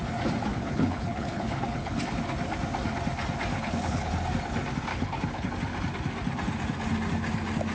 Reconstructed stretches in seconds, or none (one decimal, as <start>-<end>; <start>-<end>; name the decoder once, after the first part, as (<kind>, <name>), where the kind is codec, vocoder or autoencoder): 0.5-2.0 (codec, HILCodec); 3.5-4.1; 4.9-5.5